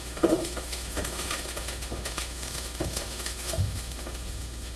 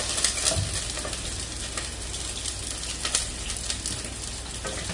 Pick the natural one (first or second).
second